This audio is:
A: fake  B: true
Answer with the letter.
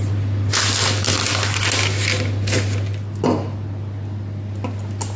B